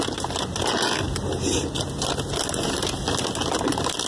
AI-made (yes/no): no